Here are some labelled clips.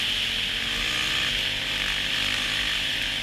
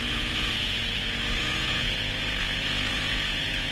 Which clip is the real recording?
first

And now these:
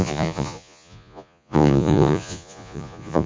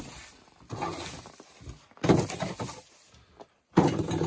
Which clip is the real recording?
second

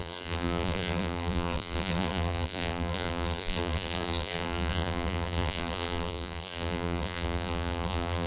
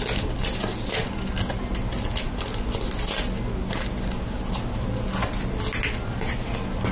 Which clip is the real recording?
second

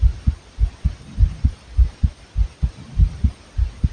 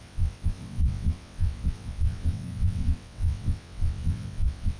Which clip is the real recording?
first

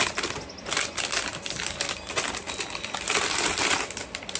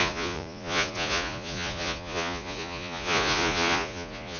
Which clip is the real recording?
first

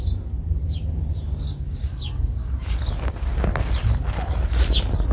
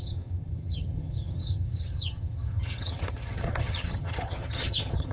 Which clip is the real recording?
first